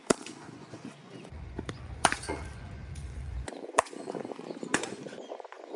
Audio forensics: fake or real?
fake